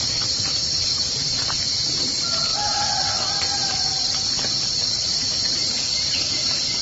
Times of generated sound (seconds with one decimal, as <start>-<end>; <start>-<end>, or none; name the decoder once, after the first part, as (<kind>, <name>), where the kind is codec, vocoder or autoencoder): 0.0-2.5 (vocoder, BigVGAN v2); 3.4-6.8